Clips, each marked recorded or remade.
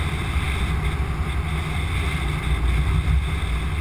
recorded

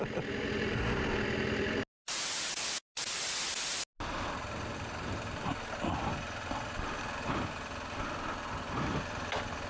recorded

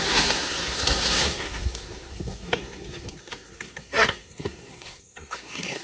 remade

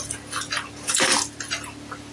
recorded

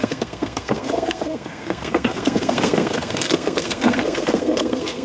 remade